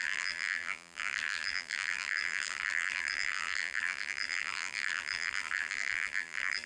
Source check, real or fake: fake